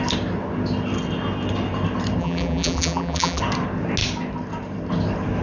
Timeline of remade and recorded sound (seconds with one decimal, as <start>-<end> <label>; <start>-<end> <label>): 0.0-2.2 recorded; 2.2-3.4 remade; 3.4-5.4 recorded